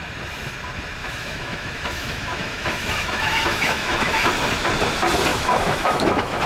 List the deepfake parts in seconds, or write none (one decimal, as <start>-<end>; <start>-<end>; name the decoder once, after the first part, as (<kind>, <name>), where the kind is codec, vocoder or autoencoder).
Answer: 1.0-4.3 (autoencoder, DAC-VAE); 5.3-6.5